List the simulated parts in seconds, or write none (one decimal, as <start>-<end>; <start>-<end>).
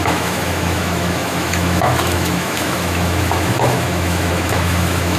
0.0-5.2